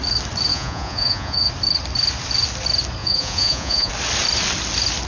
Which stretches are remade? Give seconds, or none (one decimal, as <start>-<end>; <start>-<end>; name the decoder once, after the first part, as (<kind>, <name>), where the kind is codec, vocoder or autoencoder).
0.5-1.5 (vocoder, Vocos); 3.0-3.9